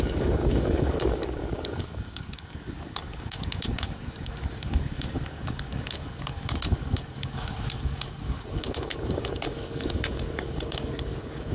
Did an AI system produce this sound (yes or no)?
yes